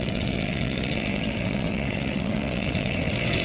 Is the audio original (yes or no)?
no